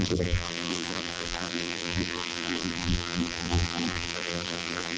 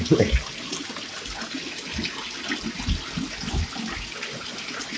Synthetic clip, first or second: first